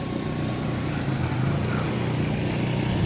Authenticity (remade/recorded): recorded